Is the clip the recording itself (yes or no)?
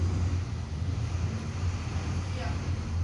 yes